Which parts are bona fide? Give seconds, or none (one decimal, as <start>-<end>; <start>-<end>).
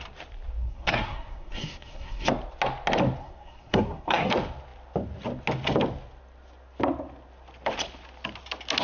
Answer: 0.0-0.6; 2.3-3.2; 4.3-8.8